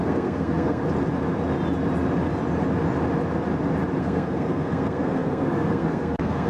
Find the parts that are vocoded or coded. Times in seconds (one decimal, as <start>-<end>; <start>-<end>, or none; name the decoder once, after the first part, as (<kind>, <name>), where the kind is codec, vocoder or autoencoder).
0.0-0.8 (codec, SNAC); 4.0-6.5